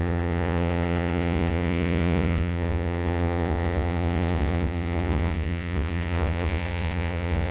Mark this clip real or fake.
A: fake